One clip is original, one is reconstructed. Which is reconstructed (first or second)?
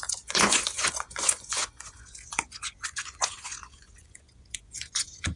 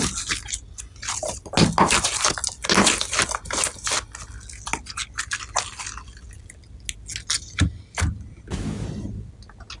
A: first